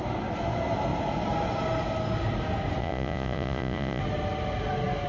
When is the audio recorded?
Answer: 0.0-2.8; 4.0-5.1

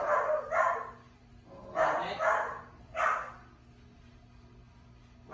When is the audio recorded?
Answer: 0.0-5.3

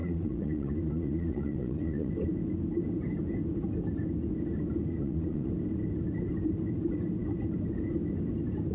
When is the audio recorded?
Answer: 2.1-4.9; 5.5-8.7

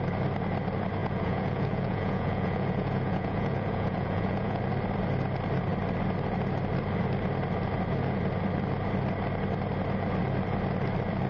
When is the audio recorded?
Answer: 0.0-1.0; 4.6-11.3

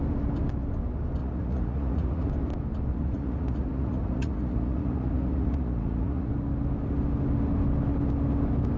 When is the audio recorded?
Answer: 0.0-1.2; 2.3-2.9; 6.3-8.8

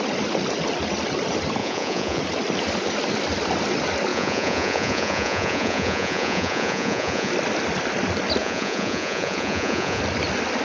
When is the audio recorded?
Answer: 0.0-1.6; 2.2-4.1; 7.3-8.4; 10.0-10.6